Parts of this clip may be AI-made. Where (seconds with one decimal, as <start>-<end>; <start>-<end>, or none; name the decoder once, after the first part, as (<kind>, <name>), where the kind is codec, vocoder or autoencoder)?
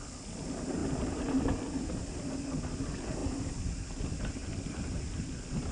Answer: none